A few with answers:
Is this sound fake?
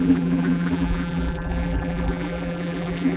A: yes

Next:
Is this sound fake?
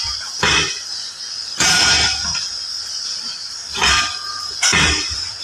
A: yes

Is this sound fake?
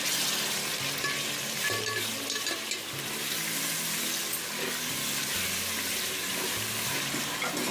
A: no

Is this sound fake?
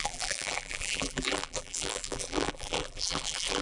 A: yes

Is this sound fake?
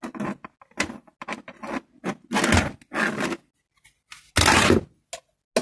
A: no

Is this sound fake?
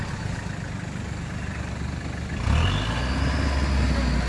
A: no